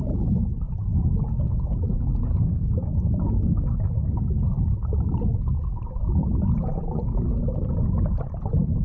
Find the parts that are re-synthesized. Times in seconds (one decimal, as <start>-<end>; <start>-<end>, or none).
0.9-3.9